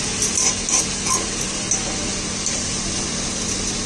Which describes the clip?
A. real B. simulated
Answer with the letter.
A